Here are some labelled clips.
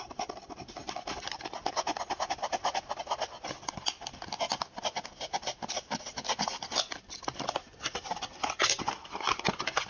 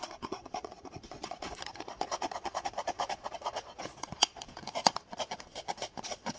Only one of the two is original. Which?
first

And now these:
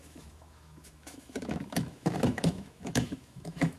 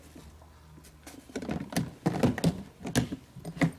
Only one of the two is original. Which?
second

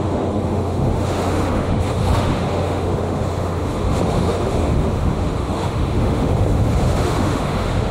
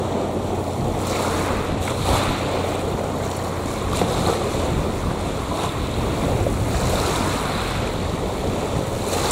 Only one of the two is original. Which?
second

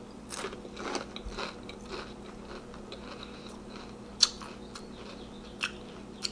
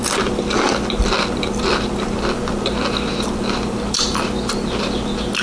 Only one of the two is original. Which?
first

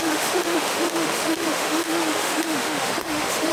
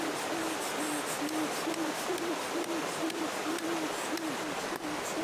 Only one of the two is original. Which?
second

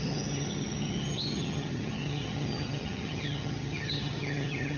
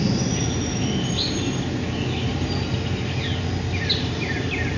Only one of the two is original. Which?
second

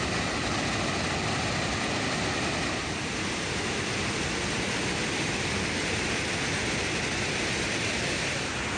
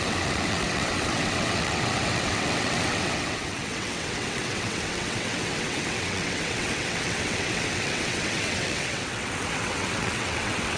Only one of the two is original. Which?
first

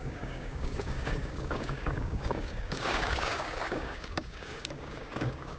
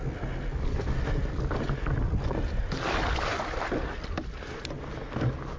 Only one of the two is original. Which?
second